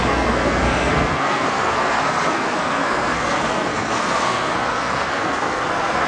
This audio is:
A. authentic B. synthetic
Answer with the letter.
B